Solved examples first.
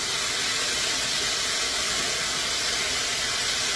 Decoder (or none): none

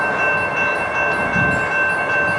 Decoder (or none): none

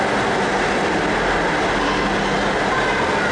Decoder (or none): none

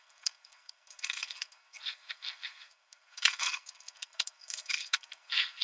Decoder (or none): codec, SNAC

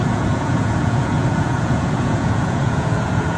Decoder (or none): vocoder, Vocos